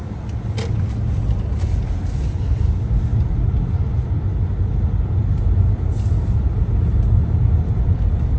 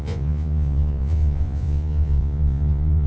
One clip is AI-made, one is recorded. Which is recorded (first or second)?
first